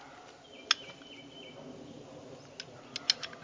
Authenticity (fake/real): real